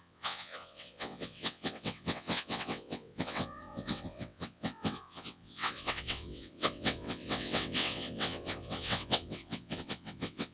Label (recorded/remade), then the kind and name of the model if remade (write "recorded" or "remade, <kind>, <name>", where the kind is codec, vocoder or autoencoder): remade, vocoder, WaveNeXt